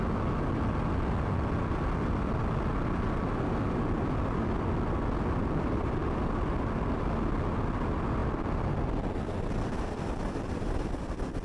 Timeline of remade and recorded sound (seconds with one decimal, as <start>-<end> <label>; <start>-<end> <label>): 0.0-11.4 recorded